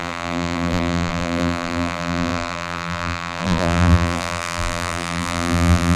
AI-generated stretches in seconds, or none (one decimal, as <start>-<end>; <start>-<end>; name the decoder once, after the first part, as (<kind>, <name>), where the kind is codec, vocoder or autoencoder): 0.0-6.0 (vocoder, BigVGAN v2)